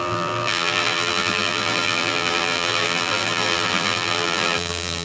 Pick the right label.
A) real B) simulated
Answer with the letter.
B